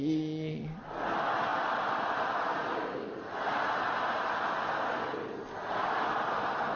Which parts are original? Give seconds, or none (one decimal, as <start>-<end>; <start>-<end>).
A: 0.0-1.5; 4.4-6.8

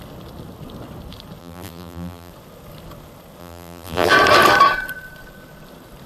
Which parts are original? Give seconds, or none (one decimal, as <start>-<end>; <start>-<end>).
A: 0.0-1.4; 2.3-3.4; 4.1-6.1

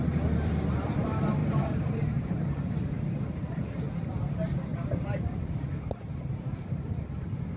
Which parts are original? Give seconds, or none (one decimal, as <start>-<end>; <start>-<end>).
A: 0.0-1.4; 2.2-4.7; 7.0-7.6

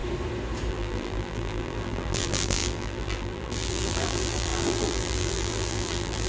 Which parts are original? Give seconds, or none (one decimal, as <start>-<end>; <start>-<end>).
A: 0.0-0.7